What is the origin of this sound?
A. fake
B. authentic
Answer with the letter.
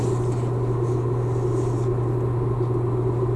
B